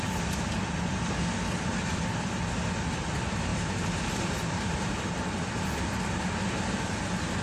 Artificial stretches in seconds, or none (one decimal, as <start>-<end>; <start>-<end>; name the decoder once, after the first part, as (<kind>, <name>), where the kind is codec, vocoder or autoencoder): 3.5-4.9 (vocoder, BigVGAN v2)